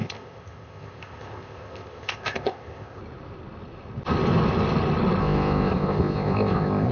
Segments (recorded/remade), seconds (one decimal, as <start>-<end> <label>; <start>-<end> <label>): 0.0-3.0 remade; 3.0-5.2 recorded; 5.2-6.9 remade